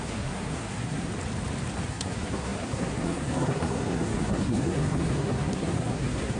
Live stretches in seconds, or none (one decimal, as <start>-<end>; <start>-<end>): 1.1-1.9